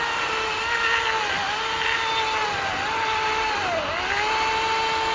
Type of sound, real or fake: real